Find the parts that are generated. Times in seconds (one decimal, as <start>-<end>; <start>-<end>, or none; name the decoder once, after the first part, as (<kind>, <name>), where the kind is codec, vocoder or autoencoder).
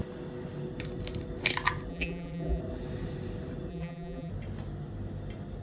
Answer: 1.9-2.6 (vocoder, BigVGAN v2); 3.7-4.3